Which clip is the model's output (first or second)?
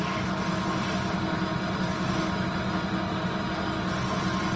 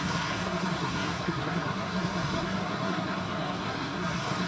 second